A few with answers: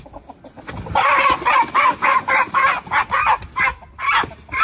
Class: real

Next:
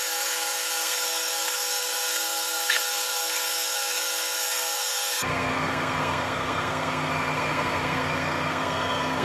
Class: fake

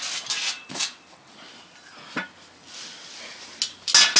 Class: real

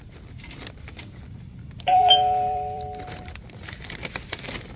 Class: fake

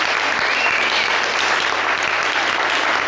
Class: real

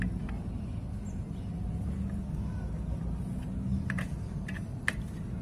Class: real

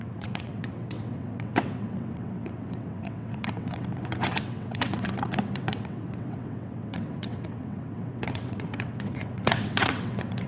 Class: fake